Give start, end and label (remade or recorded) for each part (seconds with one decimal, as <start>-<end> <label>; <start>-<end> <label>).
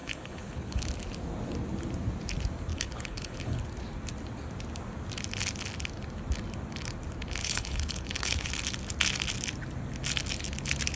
0.0-0.9 remade; 0.9-2.7 recorded; 2.7-3.6 remade; 3.6-7.4 recorded; 7.4-8.5 remade; 8.5-11.0 recorded